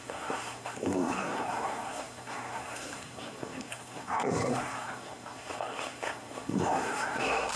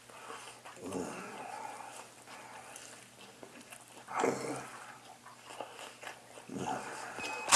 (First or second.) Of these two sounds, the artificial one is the first